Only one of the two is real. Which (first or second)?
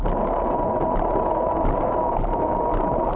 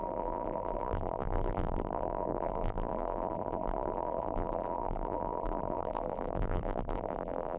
first